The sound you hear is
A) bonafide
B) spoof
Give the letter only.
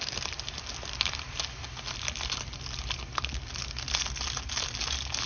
A